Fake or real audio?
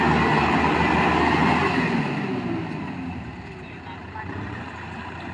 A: real